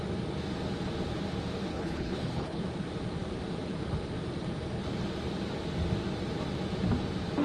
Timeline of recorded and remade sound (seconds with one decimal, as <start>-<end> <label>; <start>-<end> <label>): 0.0-1.7 recorded; 1.7-2.6 remade; 2.6-7.4 recorded